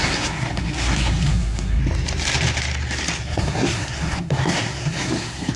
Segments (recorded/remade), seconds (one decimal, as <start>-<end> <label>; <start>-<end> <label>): 0.0-1.8 remade; 1.8-3.2 recorded; 3.2-5.6 remade